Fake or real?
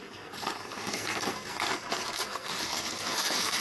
fake